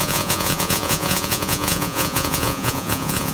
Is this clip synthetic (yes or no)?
yes